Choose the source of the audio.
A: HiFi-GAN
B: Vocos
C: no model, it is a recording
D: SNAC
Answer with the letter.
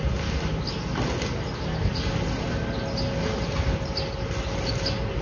C